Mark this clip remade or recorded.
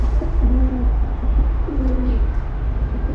recorded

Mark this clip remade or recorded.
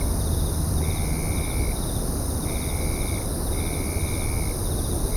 recorded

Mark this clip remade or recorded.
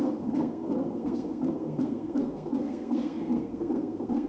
remade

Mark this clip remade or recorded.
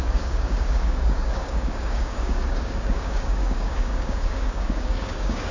remade